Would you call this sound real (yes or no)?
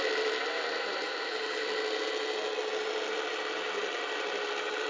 yes